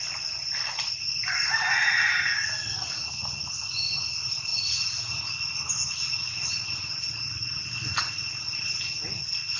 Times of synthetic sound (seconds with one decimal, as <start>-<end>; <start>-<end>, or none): none

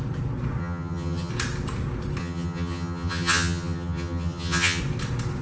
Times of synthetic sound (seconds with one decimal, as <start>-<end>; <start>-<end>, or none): 0.6-1.3; 2.2-4.8

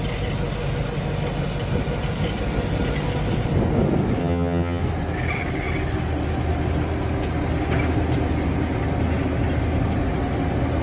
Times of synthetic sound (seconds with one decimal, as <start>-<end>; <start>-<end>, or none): 4.2-4.8